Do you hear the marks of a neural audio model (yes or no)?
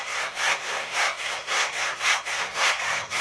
yes